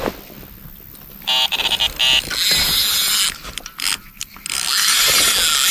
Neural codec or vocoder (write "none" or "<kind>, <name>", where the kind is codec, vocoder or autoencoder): none